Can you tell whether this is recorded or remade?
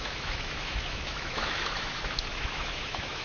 remade